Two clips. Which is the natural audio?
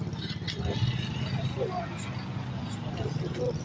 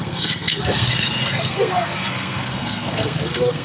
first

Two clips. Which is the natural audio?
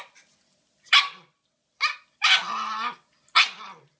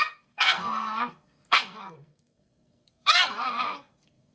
first